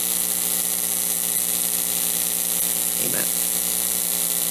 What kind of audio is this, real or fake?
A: real